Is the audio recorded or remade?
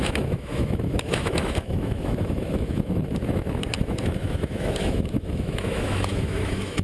remade